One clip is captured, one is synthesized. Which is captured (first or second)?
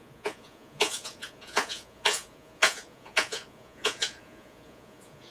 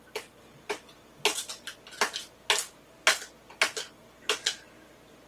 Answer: second